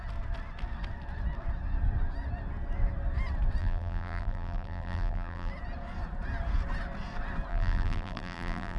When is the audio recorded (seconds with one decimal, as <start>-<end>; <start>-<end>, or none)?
0.0-3.6; 5.5-7.5